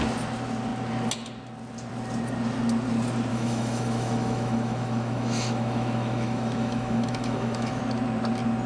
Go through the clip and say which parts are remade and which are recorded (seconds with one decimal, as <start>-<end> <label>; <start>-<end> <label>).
0.0-3.3 recorded; 3.3-7.8 remade; 7.8-8.7 recorded